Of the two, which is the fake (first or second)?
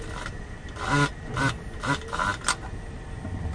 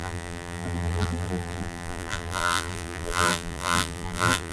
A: second